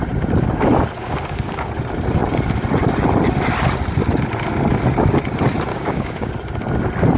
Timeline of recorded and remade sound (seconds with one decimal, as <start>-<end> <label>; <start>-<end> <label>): 0.0-1.0 recorded; 1.0-1.7 remade; 1.7-5.7 recorded; 5.7-6.3 remade; 6.3-7.2 recorded